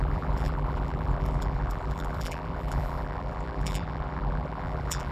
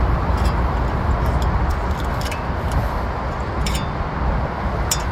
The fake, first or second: first